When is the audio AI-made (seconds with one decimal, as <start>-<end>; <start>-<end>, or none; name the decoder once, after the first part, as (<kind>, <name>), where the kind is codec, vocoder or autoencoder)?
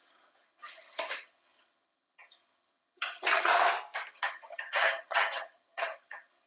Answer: 0.0-3.5 (vocoder, HiFi-GAN); 4.1-6.5